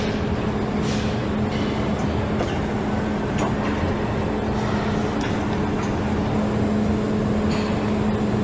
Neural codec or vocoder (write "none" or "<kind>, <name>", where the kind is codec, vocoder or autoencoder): none